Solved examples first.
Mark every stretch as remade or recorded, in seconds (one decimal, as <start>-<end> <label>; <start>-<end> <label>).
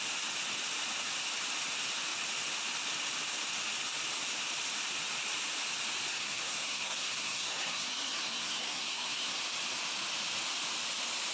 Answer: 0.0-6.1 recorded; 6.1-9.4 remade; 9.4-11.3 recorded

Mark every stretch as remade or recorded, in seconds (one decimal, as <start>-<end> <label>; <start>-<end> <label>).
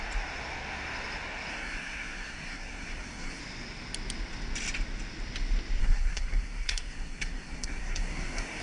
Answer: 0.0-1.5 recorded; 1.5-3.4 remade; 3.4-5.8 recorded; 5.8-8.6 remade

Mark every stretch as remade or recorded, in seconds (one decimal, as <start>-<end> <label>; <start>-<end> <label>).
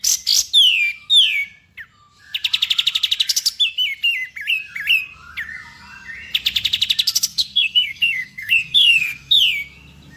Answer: 0.0-7.3 recorded; 7.3-9.4 remade; 9.4-10.2 recorded